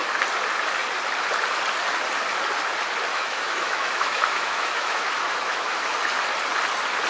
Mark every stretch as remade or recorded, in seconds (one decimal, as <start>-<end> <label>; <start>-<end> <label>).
0.0-3.1 recorded; 3.1-5.8 remade; 5.8-7.1 recorded